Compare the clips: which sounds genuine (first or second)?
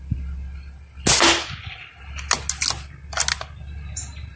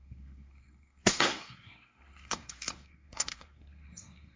first